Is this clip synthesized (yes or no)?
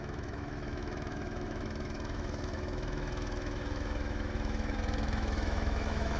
yes